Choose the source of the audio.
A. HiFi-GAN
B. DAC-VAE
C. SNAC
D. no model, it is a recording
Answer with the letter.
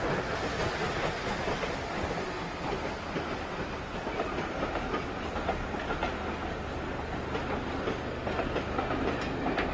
D